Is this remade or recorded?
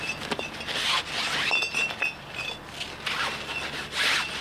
recorded